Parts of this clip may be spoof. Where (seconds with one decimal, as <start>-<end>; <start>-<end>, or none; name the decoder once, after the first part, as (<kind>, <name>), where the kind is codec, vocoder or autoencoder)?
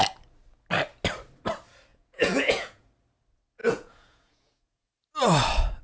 1.9-2.9 (vocoder, Vocos); 3.6-4.9